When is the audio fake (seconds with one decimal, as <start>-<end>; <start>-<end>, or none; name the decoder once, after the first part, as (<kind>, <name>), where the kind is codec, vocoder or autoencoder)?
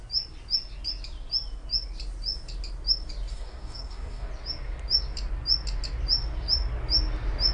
3.3-4.3 (codec, DAC)